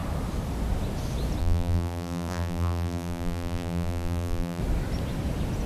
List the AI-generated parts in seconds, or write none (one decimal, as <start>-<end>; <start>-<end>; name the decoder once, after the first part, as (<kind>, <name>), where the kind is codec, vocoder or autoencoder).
1.4-4.6 (vocoder, BigVGAN v2)